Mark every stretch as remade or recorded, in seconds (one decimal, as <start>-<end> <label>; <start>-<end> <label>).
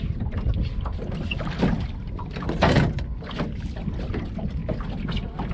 0.0-5.5 recorded